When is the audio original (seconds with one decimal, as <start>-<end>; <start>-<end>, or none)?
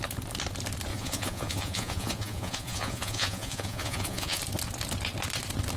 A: 0.0-0.9; 4.4-5.8